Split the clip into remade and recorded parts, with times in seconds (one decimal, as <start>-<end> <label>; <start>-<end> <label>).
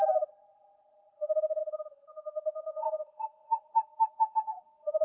0.0-1.6 recorded; 1.6-3.7 remade; 3.7-5.0 recorded